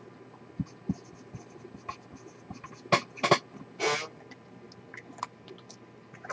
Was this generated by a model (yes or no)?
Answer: no